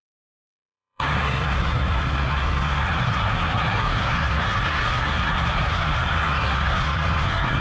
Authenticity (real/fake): fake